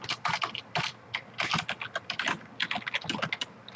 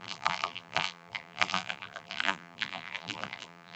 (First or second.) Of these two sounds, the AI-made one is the second